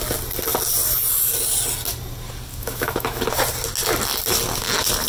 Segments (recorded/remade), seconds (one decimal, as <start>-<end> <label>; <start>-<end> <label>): 0.0-2.5 recorded; 2.5-3.2 remade; 3.2-5.1 recorded